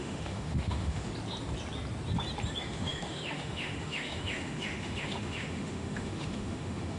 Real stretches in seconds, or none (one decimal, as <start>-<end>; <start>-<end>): 1.1-2.6